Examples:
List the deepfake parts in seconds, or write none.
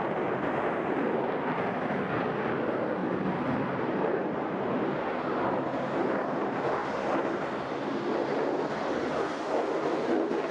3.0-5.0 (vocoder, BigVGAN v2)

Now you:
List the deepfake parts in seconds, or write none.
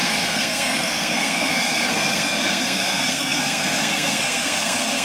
0.0-5.0 (codec, SNAC)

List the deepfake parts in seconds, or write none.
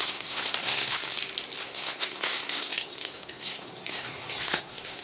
0.0-1.0 (codec, SNAC); 1.6-5.0